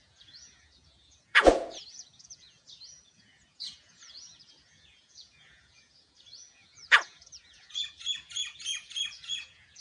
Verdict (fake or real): fake